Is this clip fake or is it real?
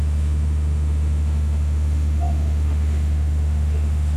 fake